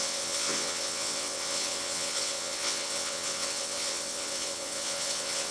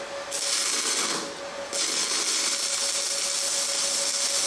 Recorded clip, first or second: second